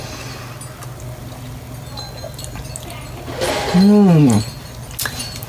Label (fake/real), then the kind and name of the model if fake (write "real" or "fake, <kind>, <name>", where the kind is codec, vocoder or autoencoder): real